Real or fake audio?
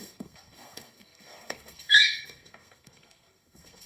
fake